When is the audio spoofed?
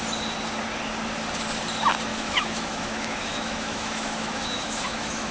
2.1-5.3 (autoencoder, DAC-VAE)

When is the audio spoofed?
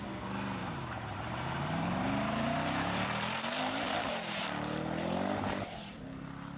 0.6-4.1 (vocoder, BigVGAN v2)